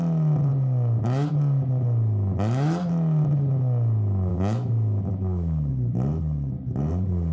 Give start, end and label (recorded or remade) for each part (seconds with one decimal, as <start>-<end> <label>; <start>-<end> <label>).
0.0-4.3 recorded; 4.3-5.7 remade; 5.7-7.3 recorded